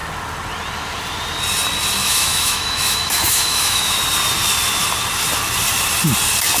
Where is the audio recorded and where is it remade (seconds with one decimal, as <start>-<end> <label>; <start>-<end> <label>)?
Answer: 0.0-2.0 recorded; 2.0-4.0 remade; 4.0-6.6 recorded